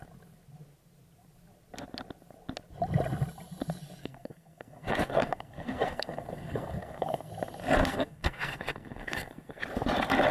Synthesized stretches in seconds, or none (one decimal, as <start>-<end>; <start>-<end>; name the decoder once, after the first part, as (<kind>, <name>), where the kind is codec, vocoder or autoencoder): 4.0-7.3 (codec, SNAC); 7.8-9.6